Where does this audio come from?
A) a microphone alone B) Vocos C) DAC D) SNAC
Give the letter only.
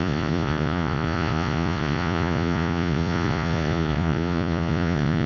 B